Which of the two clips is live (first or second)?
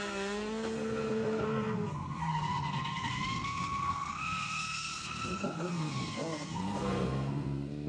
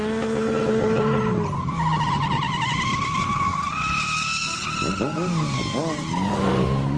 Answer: second